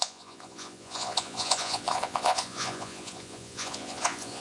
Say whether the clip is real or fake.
fake